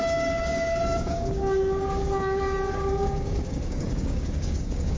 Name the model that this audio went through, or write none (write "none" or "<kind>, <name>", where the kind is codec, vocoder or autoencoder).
codec, DAC